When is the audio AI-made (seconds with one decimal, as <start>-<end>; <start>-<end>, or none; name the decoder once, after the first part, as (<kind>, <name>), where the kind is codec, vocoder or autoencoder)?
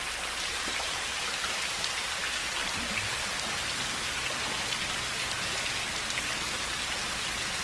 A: none